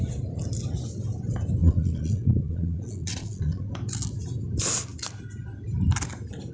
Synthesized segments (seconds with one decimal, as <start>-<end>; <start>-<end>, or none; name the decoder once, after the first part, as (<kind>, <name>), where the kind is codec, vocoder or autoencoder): 1.6-3.7 (vocoder, Vocos)